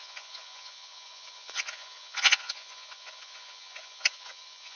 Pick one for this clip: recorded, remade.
remade